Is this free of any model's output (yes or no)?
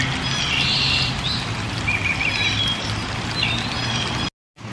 yes